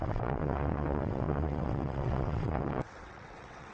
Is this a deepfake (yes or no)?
yes